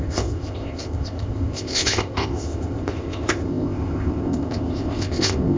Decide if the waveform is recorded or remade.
remade